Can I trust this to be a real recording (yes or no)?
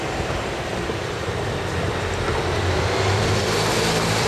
no